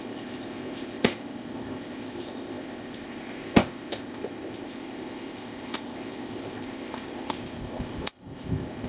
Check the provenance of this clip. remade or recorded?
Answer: remade